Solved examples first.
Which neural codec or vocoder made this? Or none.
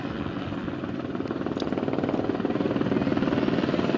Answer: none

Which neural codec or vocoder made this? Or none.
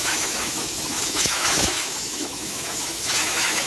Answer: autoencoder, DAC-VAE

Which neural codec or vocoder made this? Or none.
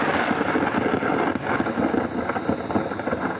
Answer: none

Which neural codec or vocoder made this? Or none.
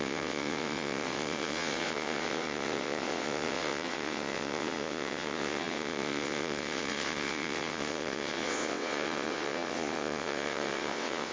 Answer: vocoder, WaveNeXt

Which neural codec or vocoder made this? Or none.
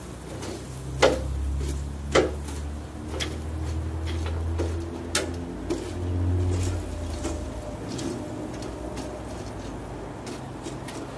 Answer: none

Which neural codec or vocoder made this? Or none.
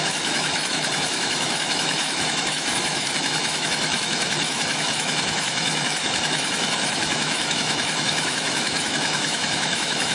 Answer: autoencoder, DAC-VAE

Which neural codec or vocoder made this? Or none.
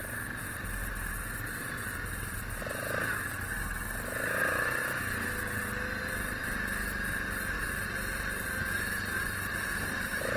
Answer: none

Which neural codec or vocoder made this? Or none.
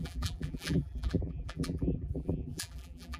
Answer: vocoder, BigVGAN v2